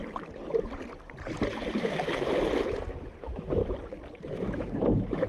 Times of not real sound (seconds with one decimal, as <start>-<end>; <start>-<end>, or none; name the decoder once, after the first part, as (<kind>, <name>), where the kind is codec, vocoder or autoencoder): 3.2-3.6 (autoencoder, DAC-VAE); 4.3-5.3